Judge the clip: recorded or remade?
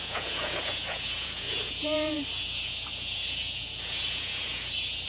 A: remade